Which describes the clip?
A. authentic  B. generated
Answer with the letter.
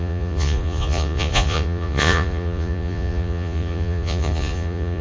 B